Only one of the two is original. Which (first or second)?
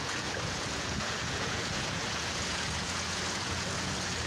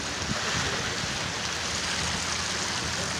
second